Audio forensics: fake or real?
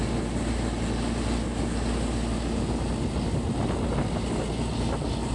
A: real